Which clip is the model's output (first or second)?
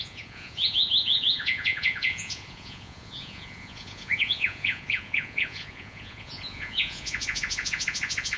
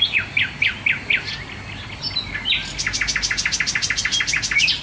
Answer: first